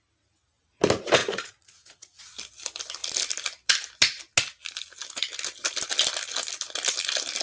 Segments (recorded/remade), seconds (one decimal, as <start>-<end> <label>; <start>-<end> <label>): 0.0-1.2 recorded; 1.2-2.2 remade; 2.2-7.4 recorded